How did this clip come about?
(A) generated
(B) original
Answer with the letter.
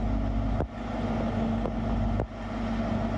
B